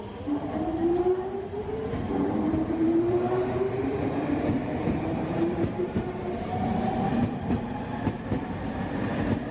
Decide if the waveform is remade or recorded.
remade